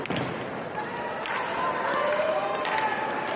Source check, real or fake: real